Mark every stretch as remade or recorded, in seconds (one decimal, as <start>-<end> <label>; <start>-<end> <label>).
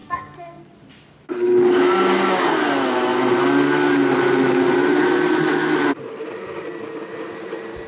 0.0-0.7 remade; 0.7-7.9 recorded